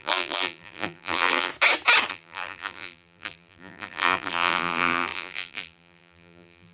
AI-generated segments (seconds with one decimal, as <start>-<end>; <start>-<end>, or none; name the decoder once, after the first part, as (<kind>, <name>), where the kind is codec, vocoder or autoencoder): 0.0-1.5 (vocoder, BigVGAN v2); 2.1-6.7

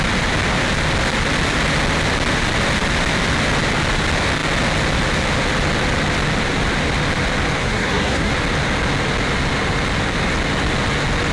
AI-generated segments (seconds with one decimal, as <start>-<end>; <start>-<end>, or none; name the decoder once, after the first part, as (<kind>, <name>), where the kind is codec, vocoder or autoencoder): 7.6-8.3 (codec, SNAC)

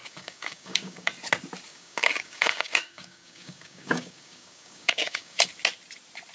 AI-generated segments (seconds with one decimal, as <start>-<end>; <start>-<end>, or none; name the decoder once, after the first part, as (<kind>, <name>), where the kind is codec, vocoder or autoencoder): 0.0-1.1 (codec, DAC); 1.7-5.5

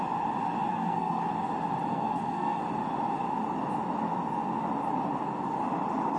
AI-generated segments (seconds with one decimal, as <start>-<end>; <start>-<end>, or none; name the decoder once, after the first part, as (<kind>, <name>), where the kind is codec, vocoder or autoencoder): 0.7-1.3 (codec, SNAC); 1.9-2.6

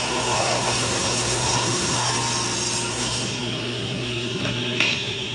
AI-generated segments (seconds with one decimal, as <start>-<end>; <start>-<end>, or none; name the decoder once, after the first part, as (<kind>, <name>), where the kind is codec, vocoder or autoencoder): 0.0-2.1 (codec, SNAC); 2.9-5.3

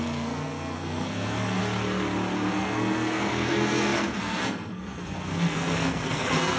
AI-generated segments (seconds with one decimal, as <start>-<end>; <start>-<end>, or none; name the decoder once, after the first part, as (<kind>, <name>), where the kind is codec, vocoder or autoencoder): 0.0-1.6 (codec, SNAC); 2.5-6.6